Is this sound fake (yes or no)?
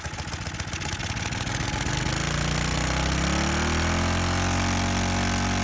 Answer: no